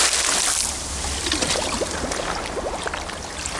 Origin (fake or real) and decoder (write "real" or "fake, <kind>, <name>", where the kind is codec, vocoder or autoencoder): real